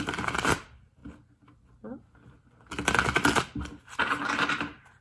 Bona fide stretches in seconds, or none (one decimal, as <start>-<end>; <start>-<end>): 1.0-4.0